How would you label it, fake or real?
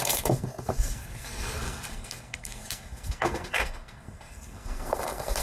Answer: fake